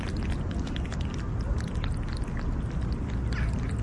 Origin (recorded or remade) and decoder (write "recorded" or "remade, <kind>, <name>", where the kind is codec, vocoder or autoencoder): recorded